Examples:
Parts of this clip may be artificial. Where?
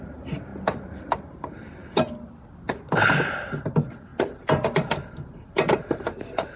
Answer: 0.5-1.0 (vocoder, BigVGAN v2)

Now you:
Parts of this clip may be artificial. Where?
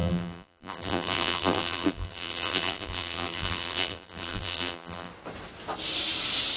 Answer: 0.0-5.1 (vocoder, BigVGAN v2)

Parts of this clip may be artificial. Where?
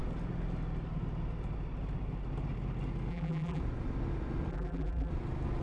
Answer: 3.1-3.6 (vocoder, BigVGAN v2); 4.5-5.1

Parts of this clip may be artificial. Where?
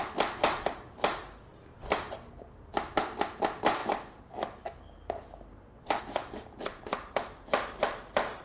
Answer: 0.0-3.8 (vocoder, BigVGAN v2); 6.0-8.4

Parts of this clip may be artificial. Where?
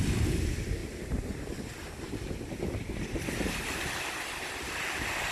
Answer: 0.0-0.8 (vocoder, BigVGAN v2); 4.0-5.3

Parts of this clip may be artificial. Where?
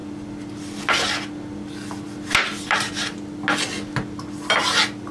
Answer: none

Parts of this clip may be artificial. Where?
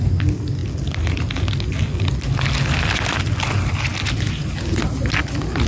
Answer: 0.6-1.5 (vocoder, BigVGAN v2)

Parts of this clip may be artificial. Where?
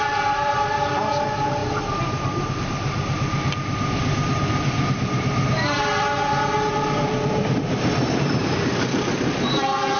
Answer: 0.0-1.6 (vocoder, BigVGAN v2); 6.7-10.0